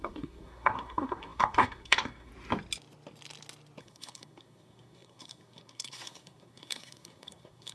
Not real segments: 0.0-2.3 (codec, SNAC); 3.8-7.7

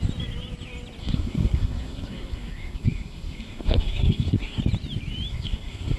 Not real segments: 1.0-4.6 (codec, SNAC); 5.3-6.0